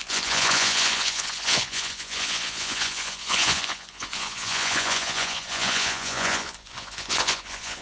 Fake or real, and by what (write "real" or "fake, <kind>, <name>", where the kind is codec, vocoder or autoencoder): fake, vocoder, Vocos